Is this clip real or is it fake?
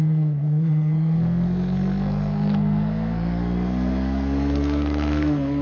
fake